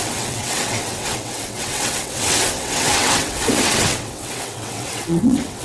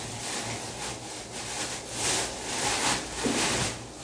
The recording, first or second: second